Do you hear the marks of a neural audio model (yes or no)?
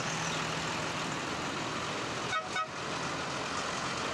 no